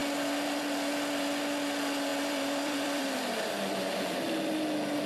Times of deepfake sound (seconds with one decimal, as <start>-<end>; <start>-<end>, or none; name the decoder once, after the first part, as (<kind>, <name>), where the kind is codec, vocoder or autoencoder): 2.1-3.8 (vocoder, BigVGAN v2)